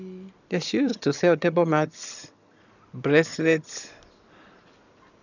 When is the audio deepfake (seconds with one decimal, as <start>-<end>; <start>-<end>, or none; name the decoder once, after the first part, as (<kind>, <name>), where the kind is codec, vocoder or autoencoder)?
0.9-2.6 (vocoder, HiFi-GAN); 3.3-3.9